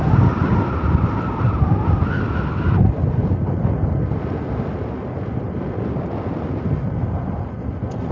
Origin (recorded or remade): recorded